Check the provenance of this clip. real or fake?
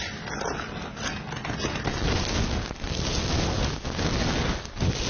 real